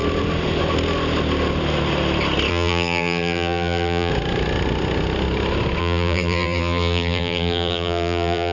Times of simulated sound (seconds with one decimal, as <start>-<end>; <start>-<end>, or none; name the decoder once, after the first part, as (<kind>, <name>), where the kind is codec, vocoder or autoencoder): 2.5-4.1 (vocoder, BigVGAN v2); 5.8-8.5